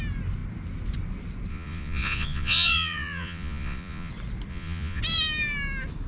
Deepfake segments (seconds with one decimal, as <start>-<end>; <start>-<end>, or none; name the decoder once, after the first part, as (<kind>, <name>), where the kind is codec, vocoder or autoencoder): 1.5-4.1 (vocoder, Vocos); 4.5-5.0